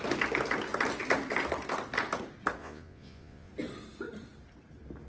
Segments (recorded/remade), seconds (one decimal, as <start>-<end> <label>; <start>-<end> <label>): 0.0-2.6 recorded; 2.6-3.5 remade; 3.5-5.1 recorded